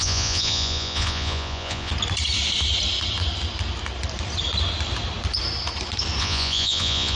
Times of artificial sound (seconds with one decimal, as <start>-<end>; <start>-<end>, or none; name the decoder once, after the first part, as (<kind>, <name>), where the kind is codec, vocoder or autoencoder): 0.0-1.9 (vocoder, Vocos); 6.2-7.2